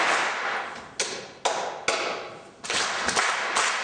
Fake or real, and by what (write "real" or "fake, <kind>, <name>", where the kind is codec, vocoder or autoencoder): real